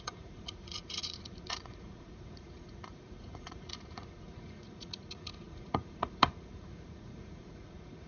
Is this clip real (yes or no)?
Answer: no